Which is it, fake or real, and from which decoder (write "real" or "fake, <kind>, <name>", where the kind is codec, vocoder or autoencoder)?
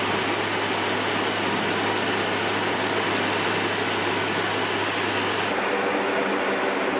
real